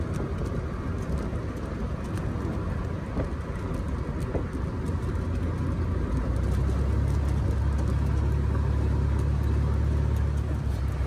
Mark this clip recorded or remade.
recorded